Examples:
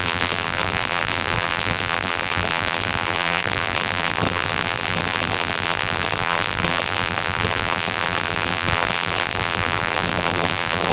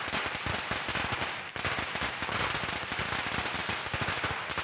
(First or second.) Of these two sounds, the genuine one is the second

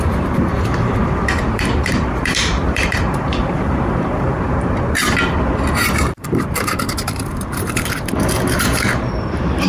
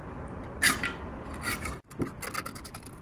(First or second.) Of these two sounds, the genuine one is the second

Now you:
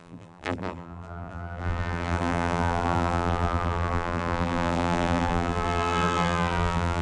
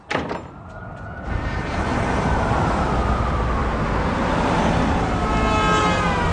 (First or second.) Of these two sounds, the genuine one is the second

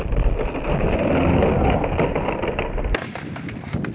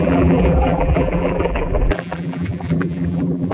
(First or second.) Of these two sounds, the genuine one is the first